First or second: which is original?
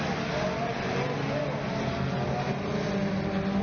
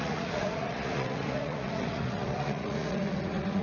first